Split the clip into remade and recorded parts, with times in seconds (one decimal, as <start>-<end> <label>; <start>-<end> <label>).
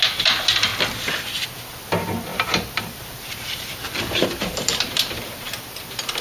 0.0-2.3 recorded; 2.3-6.2 remade